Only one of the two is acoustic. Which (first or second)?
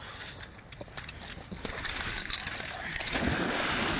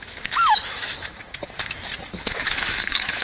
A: first